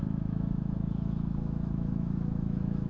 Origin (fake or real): fake